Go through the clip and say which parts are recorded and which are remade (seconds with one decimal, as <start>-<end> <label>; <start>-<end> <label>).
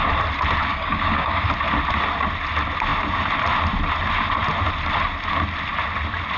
0.0-0.7 recorded; 0.7-1.5 remade; 1.5-6.4 recorded